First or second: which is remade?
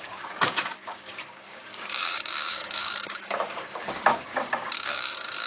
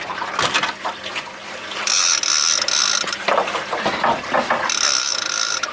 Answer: first